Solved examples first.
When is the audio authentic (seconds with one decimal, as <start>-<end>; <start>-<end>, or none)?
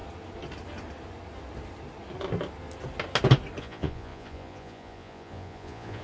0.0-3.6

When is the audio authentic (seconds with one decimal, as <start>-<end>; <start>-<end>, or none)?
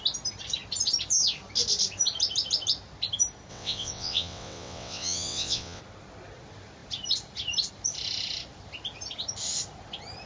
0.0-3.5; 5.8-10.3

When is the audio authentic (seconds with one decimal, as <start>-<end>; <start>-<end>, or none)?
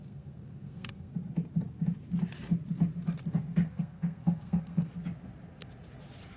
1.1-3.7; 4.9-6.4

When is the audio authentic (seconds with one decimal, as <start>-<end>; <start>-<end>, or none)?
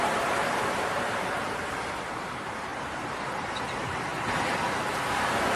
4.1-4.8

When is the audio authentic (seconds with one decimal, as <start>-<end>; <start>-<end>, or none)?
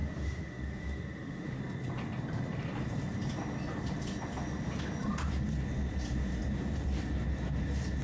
1.6-8.0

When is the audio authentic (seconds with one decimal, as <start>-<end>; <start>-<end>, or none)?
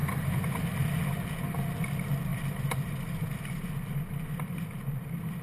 0.9-2.3; 3.7-5.4